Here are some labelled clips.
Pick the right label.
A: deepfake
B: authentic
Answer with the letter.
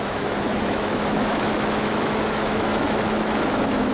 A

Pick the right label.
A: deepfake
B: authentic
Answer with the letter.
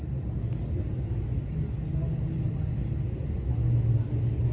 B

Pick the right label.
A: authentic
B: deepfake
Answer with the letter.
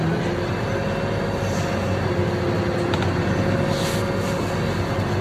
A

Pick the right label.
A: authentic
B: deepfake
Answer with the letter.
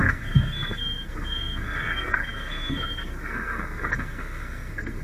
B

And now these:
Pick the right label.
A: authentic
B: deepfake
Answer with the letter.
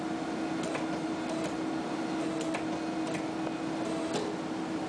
A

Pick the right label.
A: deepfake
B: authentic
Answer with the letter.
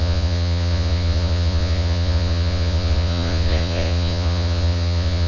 A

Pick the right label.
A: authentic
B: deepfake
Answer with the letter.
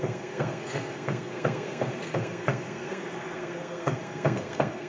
B